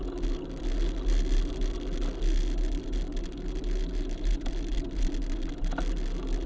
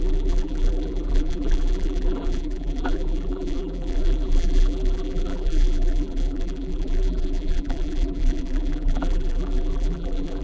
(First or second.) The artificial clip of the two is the second